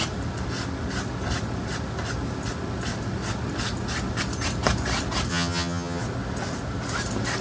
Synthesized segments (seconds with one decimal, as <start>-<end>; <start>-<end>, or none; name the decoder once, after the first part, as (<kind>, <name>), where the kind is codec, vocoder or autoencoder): 5.3-6.0 (vocoder, HiFi-GAN)